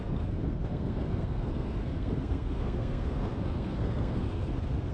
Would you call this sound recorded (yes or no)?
no